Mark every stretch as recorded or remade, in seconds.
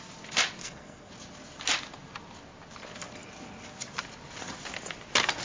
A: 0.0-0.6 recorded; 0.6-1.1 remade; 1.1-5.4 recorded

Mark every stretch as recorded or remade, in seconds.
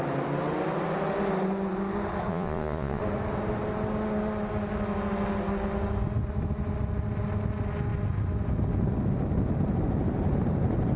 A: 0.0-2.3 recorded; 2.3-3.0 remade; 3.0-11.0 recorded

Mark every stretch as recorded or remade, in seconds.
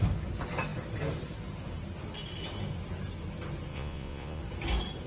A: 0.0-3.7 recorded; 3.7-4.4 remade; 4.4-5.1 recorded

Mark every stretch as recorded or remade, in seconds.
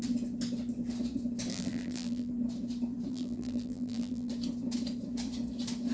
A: 0.0-1.5 recorded; 1.5-2.3 remade; 2.3-3.1 recorded; 3.1-4.3 remade; 4.3-5.9 recorded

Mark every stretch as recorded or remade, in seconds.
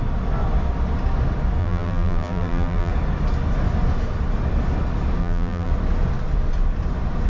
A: 0.0-1.6 recorded; 1.6-2.9 remade; 2.9-5.2 recorded; 5.2-5.7 remade; 5.7-7.3 recorded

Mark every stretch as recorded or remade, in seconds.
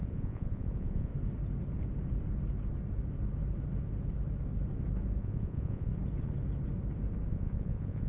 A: 0.0-1.1 remade; 1.1-5.2 recorded; 5.2-5.9 remade; 5.9-7.3 recorded; 7.3-8.1 remade